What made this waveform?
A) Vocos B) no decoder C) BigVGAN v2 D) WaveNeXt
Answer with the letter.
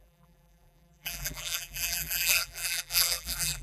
C